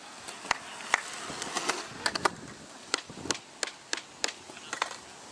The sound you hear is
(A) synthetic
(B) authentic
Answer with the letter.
B